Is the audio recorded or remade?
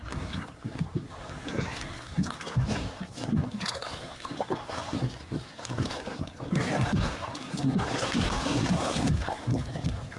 remade